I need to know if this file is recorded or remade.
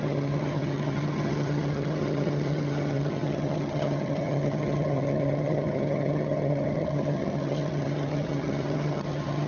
remade